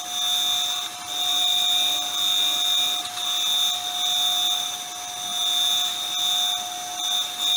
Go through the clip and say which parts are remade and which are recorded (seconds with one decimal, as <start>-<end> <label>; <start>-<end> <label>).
0.0-5.3 recorded; 5.3-5.9 remade; 5.9-7.6 recorded